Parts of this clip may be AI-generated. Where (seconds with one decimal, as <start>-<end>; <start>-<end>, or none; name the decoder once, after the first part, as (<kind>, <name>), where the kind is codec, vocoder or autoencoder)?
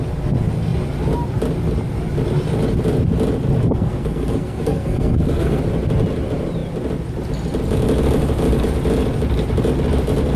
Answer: 3.6-5.6 (codec, SNAC)